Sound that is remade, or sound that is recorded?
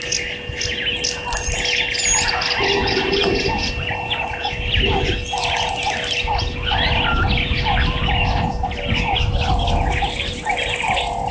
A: recorded